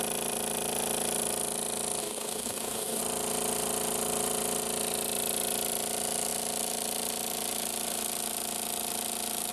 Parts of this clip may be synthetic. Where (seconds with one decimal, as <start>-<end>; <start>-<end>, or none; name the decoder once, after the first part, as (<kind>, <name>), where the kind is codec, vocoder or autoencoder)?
2.0-3.0 (codec, DAC)